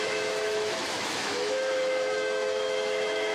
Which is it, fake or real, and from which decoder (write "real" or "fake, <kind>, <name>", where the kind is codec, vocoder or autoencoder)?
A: fake, autoencoder, DAC-VAE